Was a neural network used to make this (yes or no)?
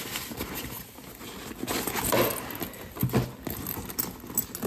no